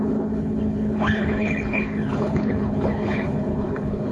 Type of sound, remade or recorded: remade